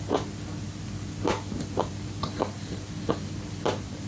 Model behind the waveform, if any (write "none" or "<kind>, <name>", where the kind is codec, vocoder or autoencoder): vocoder, BigVGAN v2